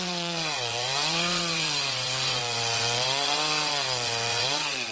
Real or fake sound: fake